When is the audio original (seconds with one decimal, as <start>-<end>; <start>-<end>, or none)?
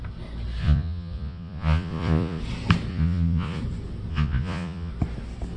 0.0-0.6; 2.4-2.9; 3.6-4.1; 4.9-5.6